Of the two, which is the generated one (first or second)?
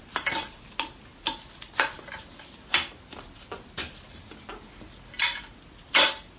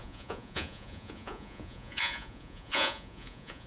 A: second